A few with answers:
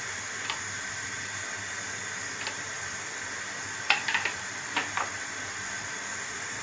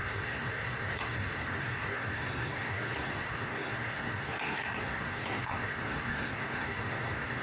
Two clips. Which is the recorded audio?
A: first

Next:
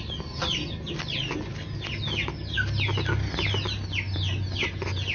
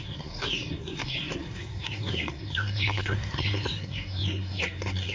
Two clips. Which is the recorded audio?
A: first